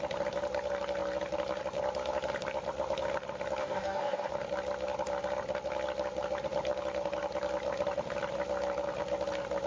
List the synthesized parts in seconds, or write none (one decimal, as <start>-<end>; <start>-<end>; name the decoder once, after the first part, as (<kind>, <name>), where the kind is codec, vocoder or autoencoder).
3.6-4.3 (codec, DAC)